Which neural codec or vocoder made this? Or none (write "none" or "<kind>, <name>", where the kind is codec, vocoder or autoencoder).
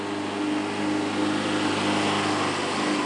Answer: none